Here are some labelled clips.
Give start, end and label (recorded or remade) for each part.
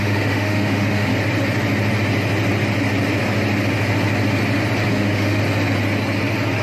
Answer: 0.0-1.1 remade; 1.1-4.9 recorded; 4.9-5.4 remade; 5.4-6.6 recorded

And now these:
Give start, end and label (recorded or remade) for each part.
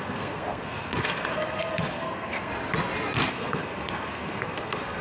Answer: 0.0-2.5 remade; 2.5-3.3 recorded; 3.3-5.0 remade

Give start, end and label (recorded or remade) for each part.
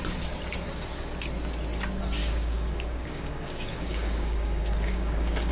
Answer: 0.0-2.2 recorded; 2.2-5.5 remade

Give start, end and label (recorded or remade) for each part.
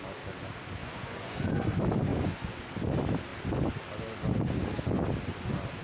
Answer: 0.0-0.8 recorded; 0.8-1.5 remade; 1.5-2.1 recorded; 2.1-2.7 remade; 2.7-5.8 recorded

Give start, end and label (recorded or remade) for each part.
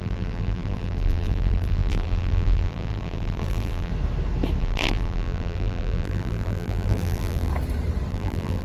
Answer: 0.0-3.9 remade; 3.9-4.6 recorded; 4.6-7.5 remade; 7.5-8.1 recorded; 8.1-8.6 remade